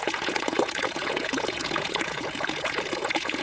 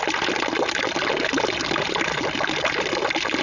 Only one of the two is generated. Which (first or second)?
first